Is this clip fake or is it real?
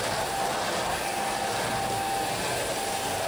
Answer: real